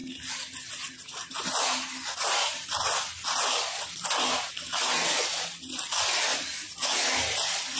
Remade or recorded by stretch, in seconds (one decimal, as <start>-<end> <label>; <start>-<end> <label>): 0.0-7.8 recorded